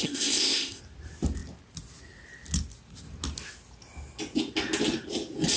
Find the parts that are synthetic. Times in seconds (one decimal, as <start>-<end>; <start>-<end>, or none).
0.0-0.8